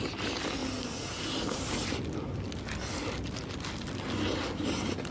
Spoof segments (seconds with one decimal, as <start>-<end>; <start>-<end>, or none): none